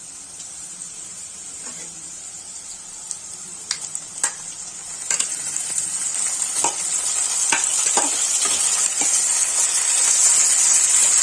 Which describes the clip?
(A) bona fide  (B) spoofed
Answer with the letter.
A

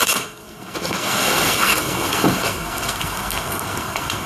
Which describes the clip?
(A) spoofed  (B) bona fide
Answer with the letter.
A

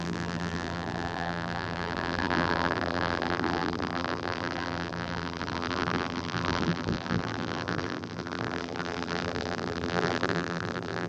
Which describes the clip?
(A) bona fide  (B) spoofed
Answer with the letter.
B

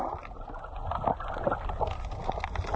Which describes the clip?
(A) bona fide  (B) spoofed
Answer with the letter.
A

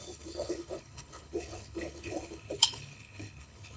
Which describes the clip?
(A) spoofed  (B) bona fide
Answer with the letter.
A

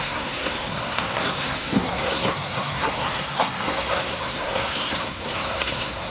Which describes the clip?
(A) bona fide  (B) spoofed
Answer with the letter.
B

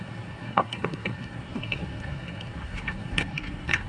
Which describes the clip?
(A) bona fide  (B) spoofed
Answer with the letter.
B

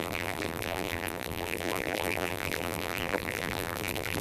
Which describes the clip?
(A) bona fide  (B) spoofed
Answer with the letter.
B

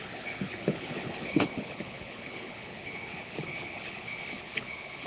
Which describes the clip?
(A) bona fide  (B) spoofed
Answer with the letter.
B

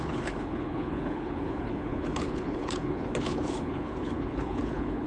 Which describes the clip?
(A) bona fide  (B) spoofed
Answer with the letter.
B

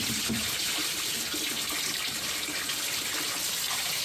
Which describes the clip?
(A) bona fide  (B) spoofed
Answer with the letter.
A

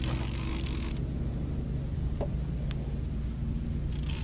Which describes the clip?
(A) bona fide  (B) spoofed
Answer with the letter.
A